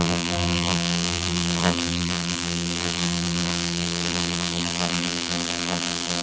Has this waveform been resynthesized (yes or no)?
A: yes